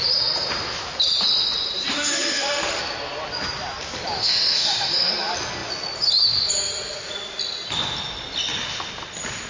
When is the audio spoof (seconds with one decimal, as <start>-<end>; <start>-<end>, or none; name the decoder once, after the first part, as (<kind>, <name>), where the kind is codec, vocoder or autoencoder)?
1.9-2.8 (autoencoder, DAC-VAE); 4.2-5.1